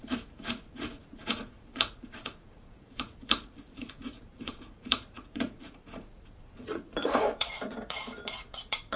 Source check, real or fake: fake